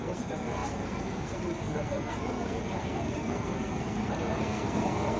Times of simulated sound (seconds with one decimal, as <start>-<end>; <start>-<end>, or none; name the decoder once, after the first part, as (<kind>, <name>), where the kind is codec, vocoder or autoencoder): 0.0-5.2 (codec, SNAC)

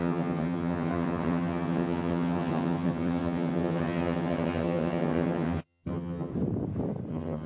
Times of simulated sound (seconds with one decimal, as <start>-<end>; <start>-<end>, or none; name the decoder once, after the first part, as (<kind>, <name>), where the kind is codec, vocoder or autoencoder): 0.0-6.3 (vocoder, HiFi-GAN); 7.1-7.5

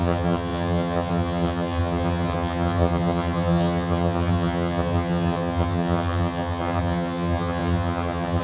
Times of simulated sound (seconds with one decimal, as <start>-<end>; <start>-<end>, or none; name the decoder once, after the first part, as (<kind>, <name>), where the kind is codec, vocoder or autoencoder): 0.0-8.4 (vocoder, HiFi-GAN)

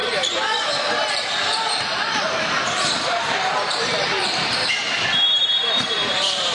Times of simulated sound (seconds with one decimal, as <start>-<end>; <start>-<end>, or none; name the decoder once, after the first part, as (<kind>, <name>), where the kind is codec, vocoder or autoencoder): 0.0-6.5 (vocoder, BigVGAN v2)

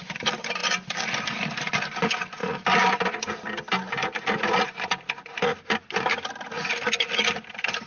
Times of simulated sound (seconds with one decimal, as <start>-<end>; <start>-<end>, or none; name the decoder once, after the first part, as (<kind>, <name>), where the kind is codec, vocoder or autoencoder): none

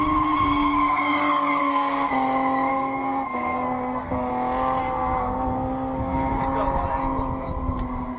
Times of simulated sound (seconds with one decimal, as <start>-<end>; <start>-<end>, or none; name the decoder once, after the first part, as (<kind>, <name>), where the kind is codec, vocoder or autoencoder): 1.6-2.1 (codec, SNAC); 2.7-4.3; 4.8-6.4